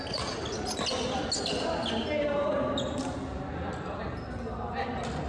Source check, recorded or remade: recorded